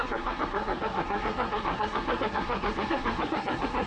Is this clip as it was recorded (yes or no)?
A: no